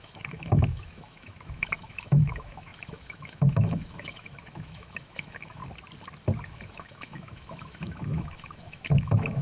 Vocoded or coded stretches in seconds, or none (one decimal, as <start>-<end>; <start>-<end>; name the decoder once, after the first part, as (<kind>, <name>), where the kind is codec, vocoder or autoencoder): 0.0-5.6 (autoencoder, DAC-VAE); 6.5-9.4